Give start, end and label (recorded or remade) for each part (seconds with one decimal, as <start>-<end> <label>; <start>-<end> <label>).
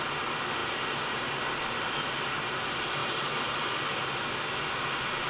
0.0-5.3 recorded